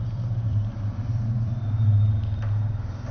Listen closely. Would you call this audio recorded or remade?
remade